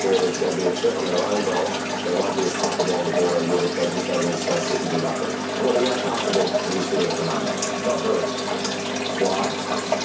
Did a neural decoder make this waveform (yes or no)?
no